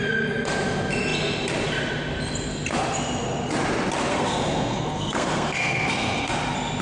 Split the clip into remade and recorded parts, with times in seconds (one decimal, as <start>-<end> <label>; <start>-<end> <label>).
0.0-4.1 recorded; 4.1-6.3 remade; 6.3-6.8 recorded

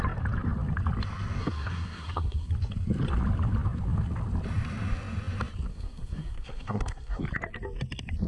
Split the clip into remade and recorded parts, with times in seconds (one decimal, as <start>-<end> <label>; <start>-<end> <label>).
0.0-1.4 recorded; 1.4-2.5 remade; 2.5-5.7 recorded; 5.7-7.2 remade; 7.2-8.3 recorded

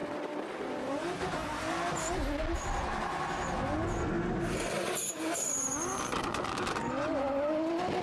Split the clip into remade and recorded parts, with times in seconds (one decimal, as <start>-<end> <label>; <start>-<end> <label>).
0.0-8.0 recorded

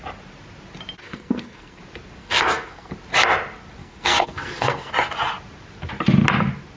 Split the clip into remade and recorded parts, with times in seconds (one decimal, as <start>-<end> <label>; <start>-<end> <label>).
0.0-1.0 recorded; 1.0-1.8 remade; 1.8-2.2 recorded; 2.2-2.9 remade; 2.9-3.8 recorded; 3.8-4.9 remade; 4.9-6.8 recorded

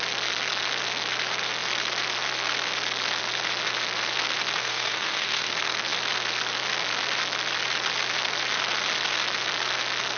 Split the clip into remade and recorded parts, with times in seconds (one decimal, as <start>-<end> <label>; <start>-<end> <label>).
0.0-4.6 recorded; 4.6-5.5 remade; 5.5-10.2 recorded

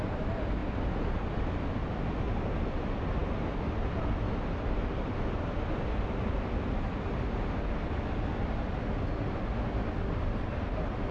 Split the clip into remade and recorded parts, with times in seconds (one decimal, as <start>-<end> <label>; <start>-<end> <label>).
0.0-11.1 recorded

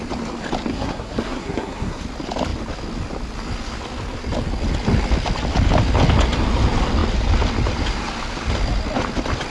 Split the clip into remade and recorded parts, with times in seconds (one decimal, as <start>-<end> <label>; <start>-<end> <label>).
0.0-0.7 recorded; 0.7-2.0 remade; 2.0-9.5 recorded